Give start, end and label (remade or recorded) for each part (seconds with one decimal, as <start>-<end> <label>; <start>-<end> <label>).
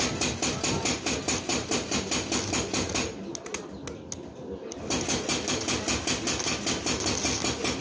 0.0-1.5 recorded; 1.5-2.1 remade; 2.1-7.8 recorded